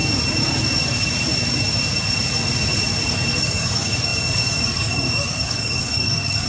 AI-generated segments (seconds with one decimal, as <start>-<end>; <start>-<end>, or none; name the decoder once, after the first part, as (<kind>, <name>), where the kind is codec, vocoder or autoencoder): 3.1-6.5 (codec, DAC)